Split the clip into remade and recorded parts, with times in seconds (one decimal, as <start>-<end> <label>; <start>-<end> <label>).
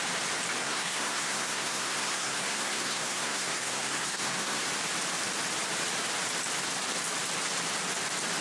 0.0-0.6 recorded; 0.6-4.7 remade; 4.7-8.4 recorded